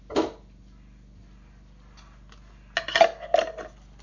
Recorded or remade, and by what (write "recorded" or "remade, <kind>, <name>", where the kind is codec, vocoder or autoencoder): recorded